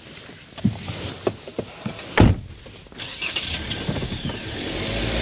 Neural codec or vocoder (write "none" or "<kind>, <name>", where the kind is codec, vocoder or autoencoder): none